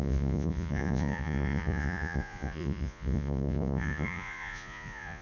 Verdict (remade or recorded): remade